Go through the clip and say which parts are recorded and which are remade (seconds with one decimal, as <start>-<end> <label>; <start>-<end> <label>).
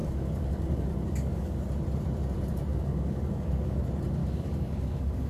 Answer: 0.0-1.6 remade; 1.6-2.7 recorded; 2.7-3.8 remade; 3.8-4.2 recorded; 4.2-5.3 remade